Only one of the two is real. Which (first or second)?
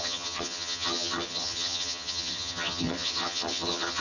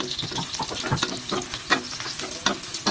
second